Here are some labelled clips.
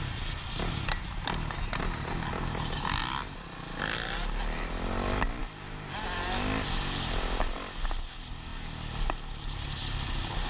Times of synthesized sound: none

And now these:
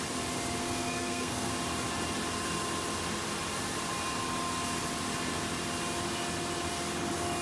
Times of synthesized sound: 0.6-1.5

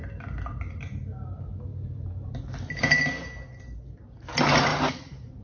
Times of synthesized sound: 0.0-0.8; 1.7-2.4; 4.7-5.4